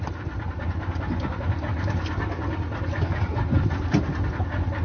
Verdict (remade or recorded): recorded